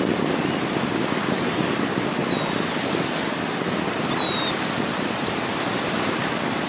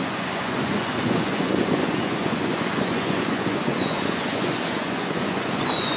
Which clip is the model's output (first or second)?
second